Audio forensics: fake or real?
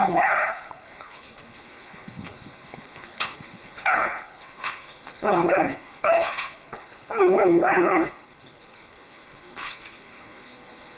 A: fake